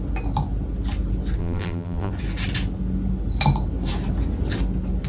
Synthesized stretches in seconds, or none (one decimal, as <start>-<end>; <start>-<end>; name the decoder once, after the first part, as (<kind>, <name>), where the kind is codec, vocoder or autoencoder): 1.4-2.1 (vocoder, BigVGAN v2)